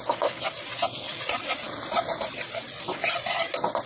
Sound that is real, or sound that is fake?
real